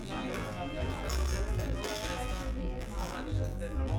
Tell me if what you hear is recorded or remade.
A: remade